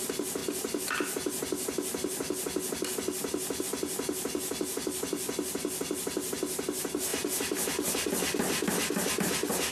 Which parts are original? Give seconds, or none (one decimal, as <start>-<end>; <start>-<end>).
0.0-9.7